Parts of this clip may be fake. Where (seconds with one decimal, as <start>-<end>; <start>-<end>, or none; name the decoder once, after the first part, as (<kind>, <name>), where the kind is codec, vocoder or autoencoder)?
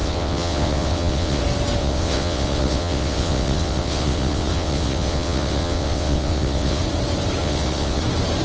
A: 0.0-1.4 (vocoder, WaveNeXt); 1.8-6.8; 7.4-8.0